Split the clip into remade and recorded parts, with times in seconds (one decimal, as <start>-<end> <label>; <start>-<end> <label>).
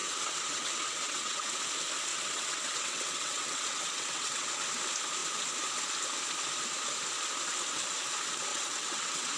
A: 0.0-1.6 remade; 1.6-2.1 recorded; 2.1-4.5 remade; 4.5-8.5 recorded; 8.5-9.4 remade